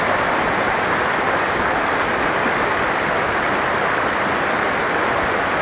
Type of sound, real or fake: real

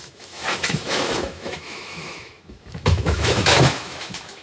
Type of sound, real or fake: fake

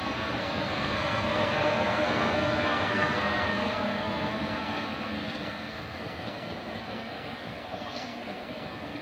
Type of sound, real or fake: fake